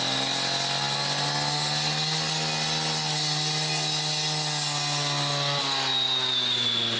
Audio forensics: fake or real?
real